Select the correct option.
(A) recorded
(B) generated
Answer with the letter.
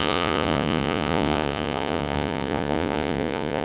B